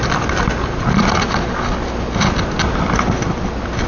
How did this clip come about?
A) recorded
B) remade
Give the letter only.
A